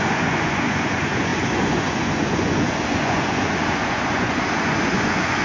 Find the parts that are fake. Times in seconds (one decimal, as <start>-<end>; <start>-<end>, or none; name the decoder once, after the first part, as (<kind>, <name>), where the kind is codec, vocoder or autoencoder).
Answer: 0.0-5.4 (vocoder, Vocos)